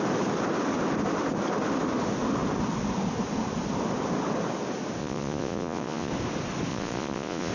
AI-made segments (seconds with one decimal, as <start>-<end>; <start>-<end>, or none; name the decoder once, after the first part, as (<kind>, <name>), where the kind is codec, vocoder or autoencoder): 5.0-6.1 (vocoder, Vocos); 6.7-7.5